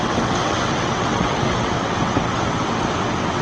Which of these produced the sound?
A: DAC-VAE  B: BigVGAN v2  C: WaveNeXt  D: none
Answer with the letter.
C